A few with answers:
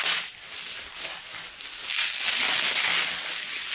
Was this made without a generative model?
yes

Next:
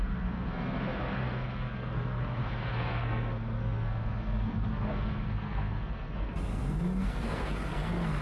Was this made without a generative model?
no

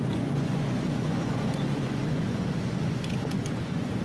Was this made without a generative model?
no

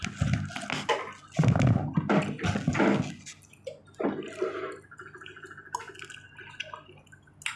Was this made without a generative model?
yes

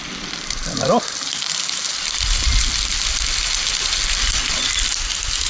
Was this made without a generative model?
no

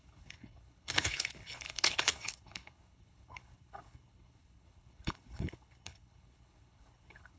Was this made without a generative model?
no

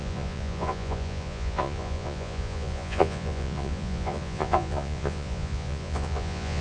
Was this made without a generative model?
no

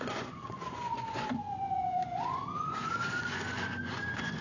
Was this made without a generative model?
no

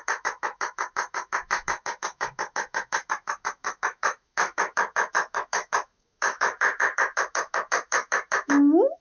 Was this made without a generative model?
no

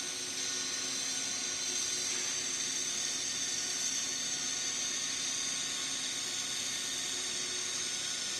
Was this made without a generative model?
yes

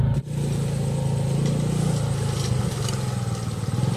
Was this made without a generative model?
yes